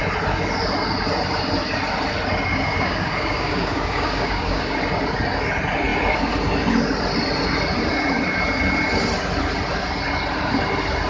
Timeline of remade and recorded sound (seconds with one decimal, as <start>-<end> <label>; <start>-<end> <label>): 0.0-2.5 recorded; 2.5-4.8 remade; 4.8-11.1 recorded